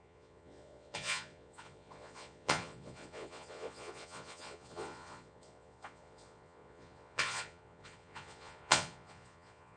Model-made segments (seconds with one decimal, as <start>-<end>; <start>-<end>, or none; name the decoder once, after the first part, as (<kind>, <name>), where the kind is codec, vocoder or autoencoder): 0.0-9.8 (vocoder, Vocos)